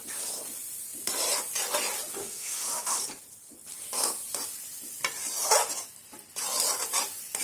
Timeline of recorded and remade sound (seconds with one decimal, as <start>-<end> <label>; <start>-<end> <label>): 0.0-2.2 recorded; 2.2-3.0 remade; 3.0-7.4 recorded